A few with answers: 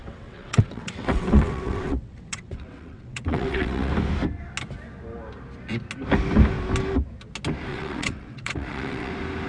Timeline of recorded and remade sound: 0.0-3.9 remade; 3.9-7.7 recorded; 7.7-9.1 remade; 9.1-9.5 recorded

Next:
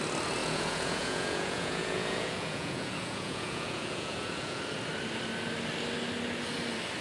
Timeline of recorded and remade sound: 0.0-0.4 recorded; 0.4-4.6 remade; 4.6-7.0 recorded

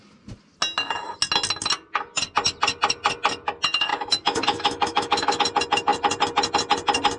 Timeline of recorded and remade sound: 0.0-3.9 recorded; 3.9-5.4 remade; 5.4-7.2 recorded

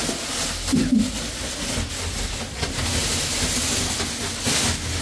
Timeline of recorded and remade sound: 0.0-5.0 recorded

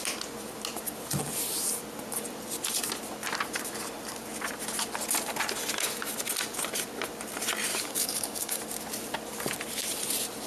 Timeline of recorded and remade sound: 0.0-7.7 recorded; 7.7-8.6 remade; 8.6-10.5 recorded

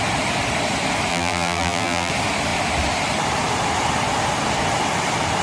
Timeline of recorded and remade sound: 0.0-1.1 recorded; 1.1-2.1 remade; 2.1-5.4 recorded

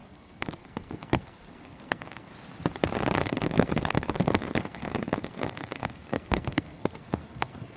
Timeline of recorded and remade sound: 0.0-2.3 remade; 2.3-3.2 recorded; 3.2-7.8 remade

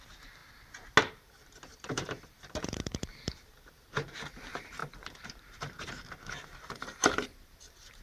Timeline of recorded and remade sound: 0.0-0.4 remade; 0.4-1.1 recorded; 1.1-8.0 remade